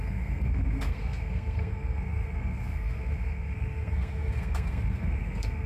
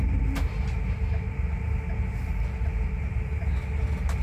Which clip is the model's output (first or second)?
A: first